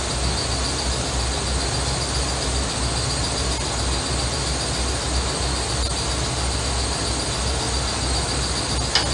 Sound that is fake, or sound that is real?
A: real